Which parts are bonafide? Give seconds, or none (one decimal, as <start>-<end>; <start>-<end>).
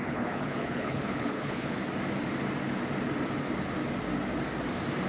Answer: 1.8-5.1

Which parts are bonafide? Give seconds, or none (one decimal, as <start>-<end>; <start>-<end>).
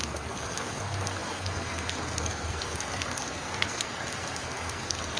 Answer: none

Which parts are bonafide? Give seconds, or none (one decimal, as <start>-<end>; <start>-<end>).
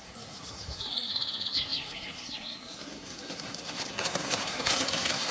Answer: none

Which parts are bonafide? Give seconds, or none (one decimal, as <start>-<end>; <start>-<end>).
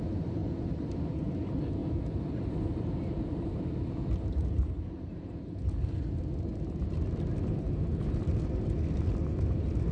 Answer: 0.0-0.4; 1.4-1.8; 3.9-6.5; 8.1-9.9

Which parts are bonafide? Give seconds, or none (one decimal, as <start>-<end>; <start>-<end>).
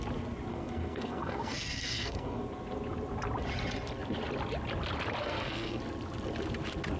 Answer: 0.0-0.5; 2.4-5.2; 5.8-7.0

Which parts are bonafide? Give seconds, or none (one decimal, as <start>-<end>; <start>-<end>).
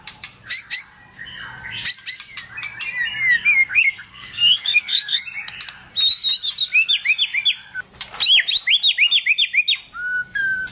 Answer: 0.0-3.6; 5.2-10.7